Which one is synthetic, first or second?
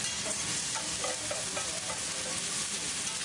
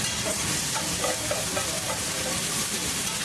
second